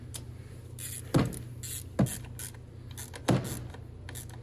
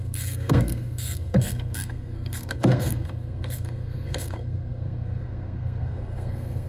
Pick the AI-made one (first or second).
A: second